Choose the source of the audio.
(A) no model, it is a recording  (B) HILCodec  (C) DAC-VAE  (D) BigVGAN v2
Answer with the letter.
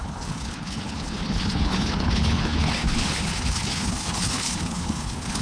B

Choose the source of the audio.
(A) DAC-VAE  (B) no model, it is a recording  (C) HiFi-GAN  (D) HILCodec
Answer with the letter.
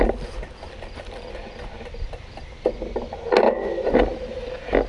B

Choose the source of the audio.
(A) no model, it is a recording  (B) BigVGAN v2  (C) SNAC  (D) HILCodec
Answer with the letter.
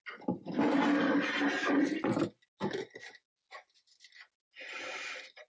A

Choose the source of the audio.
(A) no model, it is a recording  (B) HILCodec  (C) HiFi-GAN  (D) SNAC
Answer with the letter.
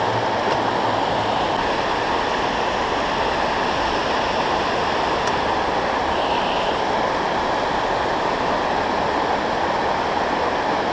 A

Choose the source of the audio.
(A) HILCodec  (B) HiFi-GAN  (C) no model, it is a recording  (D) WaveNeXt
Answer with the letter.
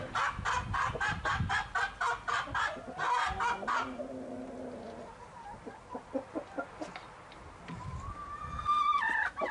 C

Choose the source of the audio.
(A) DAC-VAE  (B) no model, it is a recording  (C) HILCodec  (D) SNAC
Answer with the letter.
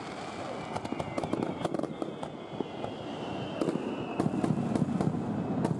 B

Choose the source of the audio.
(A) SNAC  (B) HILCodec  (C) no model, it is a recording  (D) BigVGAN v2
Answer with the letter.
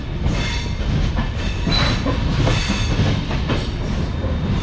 C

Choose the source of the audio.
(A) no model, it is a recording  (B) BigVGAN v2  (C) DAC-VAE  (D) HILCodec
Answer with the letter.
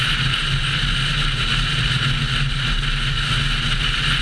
A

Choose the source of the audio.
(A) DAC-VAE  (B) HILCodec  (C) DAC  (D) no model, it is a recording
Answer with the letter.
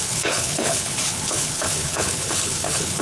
B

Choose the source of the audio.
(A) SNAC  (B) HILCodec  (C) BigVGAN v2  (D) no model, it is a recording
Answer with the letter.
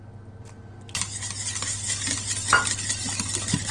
D